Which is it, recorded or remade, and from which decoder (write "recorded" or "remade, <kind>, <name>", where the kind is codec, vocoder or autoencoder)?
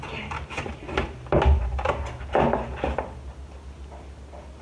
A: recorded